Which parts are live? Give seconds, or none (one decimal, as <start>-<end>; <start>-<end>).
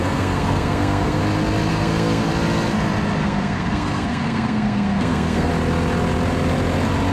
1.2-1.7; 2.3-3.2; 5.5-7.1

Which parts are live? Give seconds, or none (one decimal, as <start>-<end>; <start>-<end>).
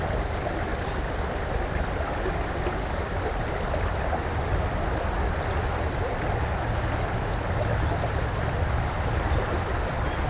0.0-10.3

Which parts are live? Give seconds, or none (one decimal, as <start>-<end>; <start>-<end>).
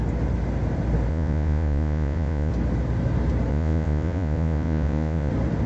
0.0-1.1; 2.5-3.5; 5.3-5.7